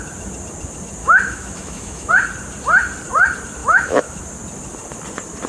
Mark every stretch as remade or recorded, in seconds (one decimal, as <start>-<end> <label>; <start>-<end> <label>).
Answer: 0.0-1.0 recorded; 1.0-2.1 remade; 2.1-3.6 recorded; 3.6-4.2 remade; 4.2-5.5 recorded